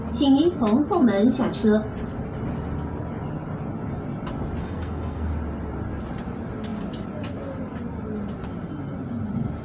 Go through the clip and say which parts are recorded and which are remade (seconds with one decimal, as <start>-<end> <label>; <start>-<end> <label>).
0.0-4.6 recorded; 4.6-5.3 remade; 5.3-9.6 recorded